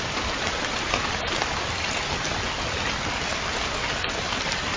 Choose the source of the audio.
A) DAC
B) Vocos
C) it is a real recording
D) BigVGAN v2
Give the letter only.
C